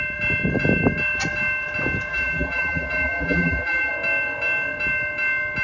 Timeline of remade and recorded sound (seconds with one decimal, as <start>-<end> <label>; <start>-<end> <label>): 0.0-2.1 recorded; 2.1-3.9 remade; 3.9-5.6 recorded